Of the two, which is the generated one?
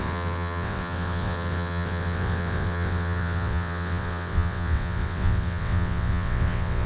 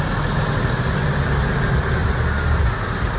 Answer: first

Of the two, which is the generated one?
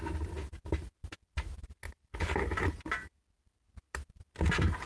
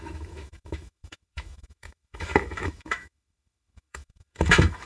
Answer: second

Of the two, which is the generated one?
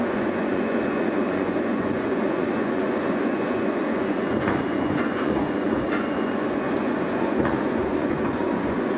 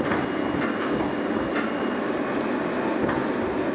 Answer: first